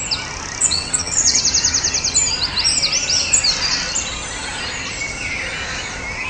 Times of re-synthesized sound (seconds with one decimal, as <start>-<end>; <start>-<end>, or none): 0.6-1.4